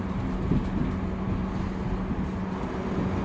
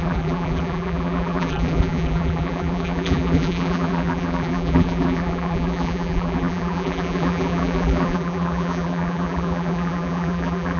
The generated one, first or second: second